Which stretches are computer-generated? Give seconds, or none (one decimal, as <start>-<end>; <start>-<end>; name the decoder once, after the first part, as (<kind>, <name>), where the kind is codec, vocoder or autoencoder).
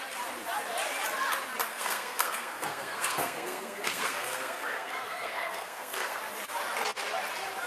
1.7-6.2 (codec, SNAC)